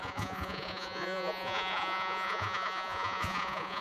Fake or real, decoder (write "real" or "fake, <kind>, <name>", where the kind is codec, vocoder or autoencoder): fake, vocoder, Vocos